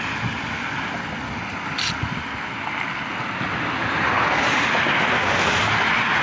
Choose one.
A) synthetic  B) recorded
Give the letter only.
B